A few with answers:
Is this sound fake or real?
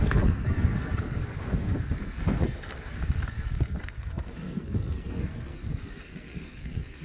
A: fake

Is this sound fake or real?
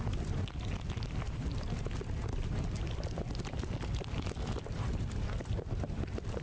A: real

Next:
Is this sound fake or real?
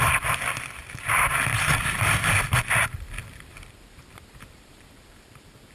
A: fake